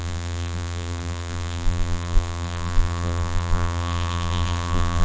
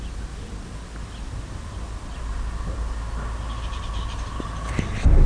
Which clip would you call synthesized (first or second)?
first